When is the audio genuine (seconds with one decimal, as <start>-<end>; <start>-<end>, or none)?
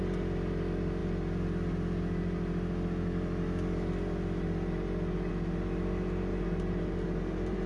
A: 0.0-6.3